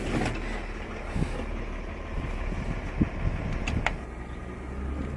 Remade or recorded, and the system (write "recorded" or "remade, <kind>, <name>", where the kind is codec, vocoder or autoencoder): recorded